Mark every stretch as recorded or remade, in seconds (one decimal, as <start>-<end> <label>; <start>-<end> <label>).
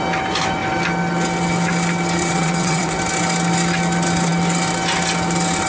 0.0-2.2 recorded; 2.2-3.0 remade; 3.0-5.7 recorded